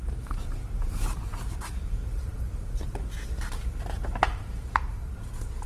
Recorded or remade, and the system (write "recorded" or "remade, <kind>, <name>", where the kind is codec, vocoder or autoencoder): remade, vocoder, BigVGAN v2